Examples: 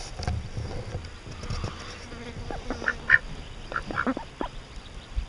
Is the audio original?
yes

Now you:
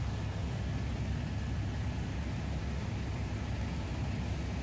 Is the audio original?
yes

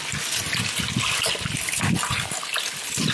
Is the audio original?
yes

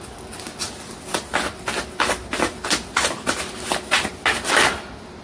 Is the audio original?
yes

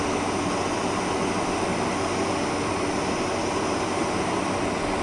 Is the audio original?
yes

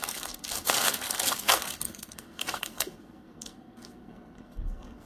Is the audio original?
no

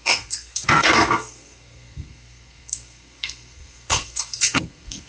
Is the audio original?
no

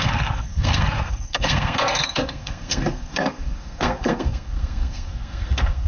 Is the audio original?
no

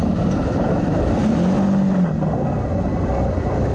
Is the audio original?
yes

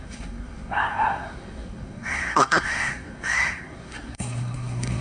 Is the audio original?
no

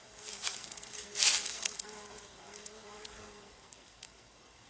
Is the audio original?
no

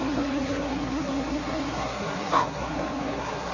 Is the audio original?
no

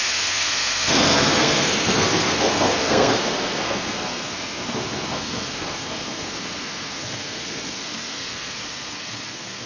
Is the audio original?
no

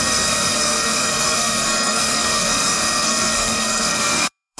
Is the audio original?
no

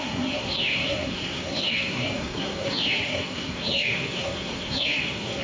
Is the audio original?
no